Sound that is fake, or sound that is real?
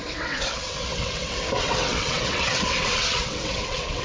fake